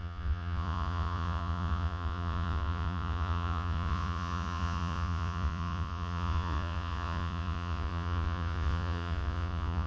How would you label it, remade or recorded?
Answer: remade